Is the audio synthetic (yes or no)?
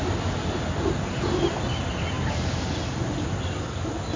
no